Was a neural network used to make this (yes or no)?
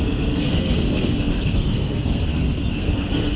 yes